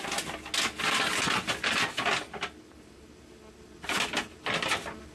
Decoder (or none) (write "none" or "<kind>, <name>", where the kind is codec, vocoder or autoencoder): none